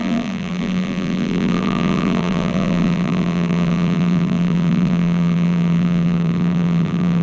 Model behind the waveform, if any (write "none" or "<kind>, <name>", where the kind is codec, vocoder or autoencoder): vocoder, BigVGAN v2